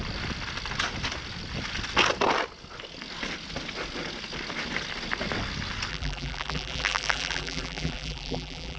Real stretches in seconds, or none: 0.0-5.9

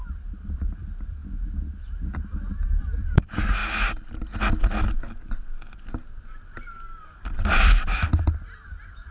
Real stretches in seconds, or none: 0.0-0.6; 1.2-2.5; 3.6-9.1

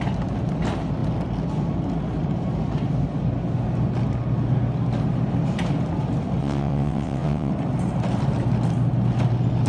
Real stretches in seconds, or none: 0.0-6.4; 7.5-9.7